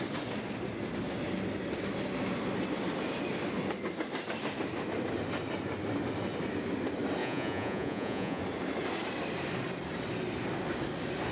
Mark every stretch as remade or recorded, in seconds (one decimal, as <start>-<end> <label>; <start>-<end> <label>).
0.0-7.2 recorded; 7.2-8.4 remade; 8.4-11.3 recorded